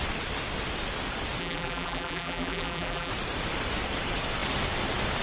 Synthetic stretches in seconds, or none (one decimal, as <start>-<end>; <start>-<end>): 1.4-3.1